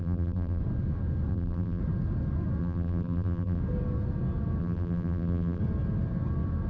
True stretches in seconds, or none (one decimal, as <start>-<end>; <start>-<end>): 0.6-1.3; 1.8-2.6; 3.6-4.6; 5.6-6.7